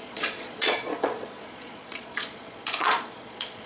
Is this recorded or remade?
remade